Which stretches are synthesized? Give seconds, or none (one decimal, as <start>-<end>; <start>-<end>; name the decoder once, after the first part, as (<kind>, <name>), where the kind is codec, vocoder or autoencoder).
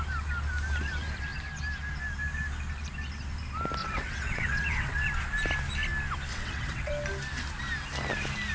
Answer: 3.8-5.1 (vocoder, WaveNeXt); 6.3-6.9